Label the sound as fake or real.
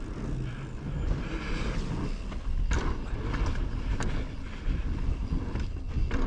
real